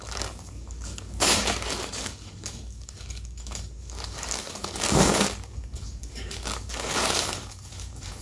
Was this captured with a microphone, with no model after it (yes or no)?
no